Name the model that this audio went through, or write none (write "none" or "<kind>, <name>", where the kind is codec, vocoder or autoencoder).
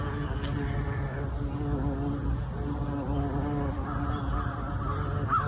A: none